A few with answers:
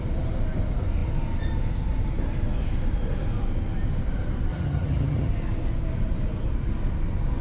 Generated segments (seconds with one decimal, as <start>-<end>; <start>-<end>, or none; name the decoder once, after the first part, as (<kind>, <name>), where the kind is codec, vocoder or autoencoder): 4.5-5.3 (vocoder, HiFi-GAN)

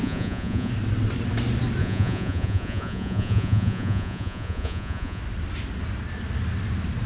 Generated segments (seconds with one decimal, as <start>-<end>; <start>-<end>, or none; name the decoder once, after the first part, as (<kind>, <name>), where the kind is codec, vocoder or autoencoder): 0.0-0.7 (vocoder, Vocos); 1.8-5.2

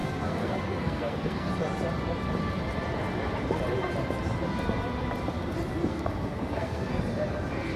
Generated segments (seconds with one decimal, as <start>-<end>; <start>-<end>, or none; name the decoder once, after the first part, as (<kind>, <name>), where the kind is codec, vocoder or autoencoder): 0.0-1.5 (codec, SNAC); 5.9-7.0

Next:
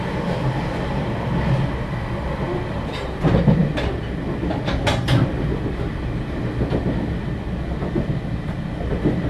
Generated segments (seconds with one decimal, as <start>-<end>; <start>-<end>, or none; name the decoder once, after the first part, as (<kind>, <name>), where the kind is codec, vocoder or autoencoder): none

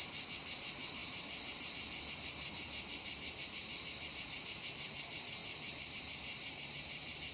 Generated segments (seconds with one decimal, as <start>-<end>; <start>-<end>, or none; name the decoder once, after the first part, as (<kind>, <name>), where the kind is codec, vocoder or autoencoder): 0.0-7.3 (vocoder, BigVGAN v2)